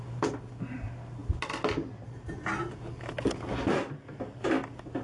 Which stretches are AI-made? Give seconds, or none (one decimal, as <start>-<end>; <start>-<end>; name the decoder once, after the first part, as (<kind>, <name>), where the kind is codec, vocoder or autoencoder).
none

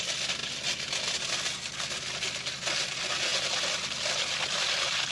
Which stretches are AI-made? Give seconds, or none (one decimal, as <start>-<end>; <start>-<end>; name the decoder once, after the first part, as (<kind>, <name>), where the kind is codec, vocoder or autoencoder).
none

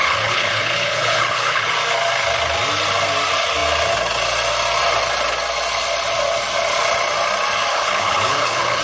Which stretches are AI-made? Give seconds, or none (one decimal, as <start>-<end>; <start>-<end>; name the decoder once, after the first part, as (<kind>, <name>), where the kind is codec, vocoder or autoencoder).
0.0-1.7 (codec, HILCodec); 7.7-8.8

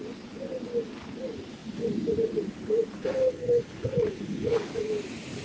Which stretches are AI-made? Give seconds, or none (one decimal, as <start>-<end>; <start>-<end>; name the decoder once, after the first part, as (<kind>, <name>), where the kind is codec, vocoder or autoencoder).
3.0-4.6 (codec, HILCodec)

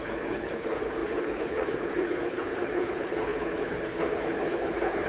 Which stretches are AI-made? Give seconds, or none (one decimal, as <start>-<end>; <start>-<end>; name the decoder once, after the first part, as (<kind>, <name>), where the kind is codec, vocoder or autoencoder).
0.0-5.1 (codec, HILCodec)

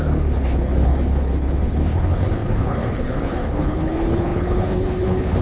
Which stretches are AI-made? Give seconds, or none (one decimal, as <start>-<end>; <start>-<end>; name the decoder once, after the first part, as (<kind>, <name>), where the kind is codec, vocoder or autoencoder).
0.0-5.4 (codec, HILCodec)